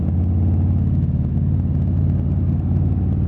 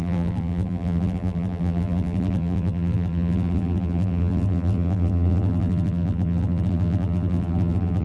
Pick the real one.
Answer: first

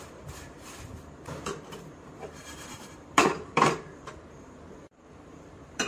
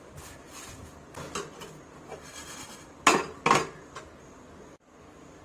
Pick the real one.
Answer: second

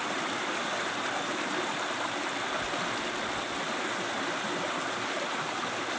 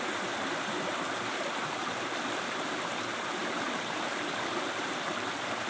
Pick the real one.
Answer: first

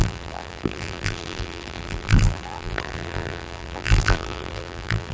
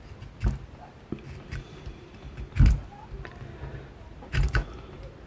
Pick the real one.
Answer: second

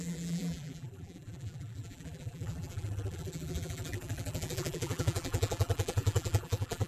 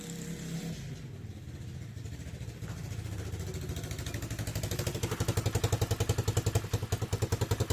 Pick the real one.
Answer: second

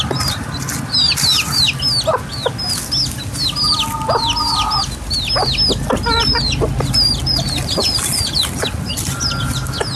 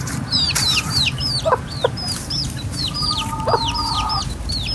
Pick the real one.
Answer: first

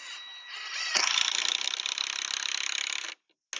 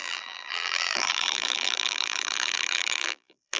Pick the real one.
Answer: first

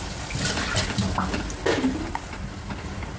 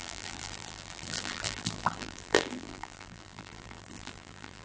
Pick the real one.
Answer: first